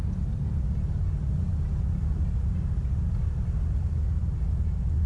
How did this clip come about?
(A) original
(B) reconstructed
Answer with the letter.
A